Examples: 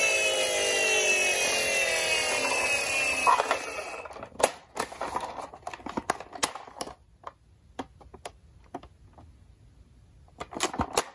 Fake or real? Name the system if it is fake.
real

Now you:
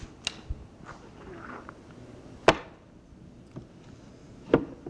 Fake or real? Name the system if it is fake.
real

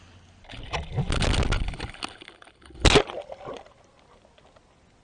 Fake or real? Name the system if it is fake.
real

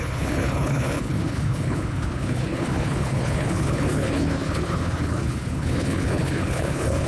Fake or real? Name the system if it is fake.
fake, codec, HILCodec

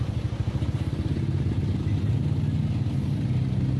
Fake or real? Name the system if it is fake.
real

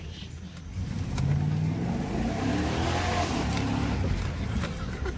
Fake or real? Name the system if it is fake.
real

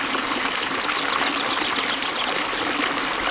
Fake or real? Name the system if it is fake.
real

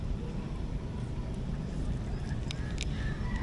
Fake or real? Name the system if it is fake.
real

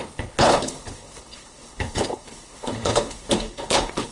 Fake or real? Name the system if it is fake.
fake, codec, HILCodec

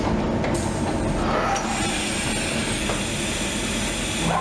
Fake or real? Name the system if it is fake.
real